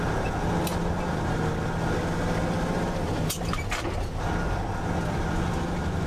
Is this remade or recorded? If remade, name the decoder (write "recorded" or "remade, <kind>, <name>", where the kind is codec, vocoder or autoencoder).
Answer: recorded